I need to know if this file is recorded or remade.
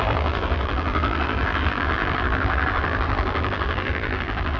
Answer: remade